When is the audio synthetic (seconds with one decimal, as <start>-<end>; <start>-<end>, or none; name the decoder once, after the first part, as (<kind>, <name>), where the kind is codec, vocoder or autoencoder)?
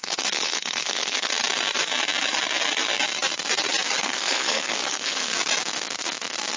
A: 0.0-1.3 (codec, SNAC); 4.0-5.3